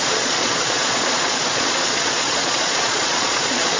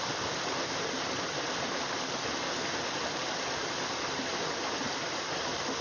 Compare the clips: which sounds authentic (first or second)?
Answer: second